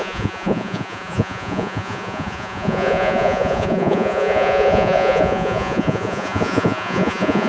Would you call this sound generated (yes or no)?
yes